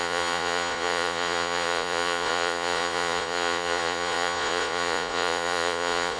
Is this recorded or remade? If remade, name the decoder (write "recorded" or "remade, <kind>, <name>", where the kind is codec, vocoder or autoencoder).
remade, vocoder, Vocos